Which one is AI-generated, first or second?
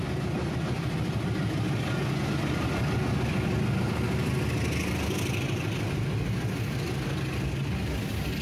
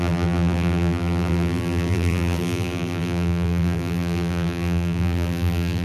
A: second